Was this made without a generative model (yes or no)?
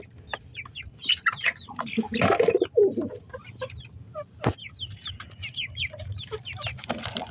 no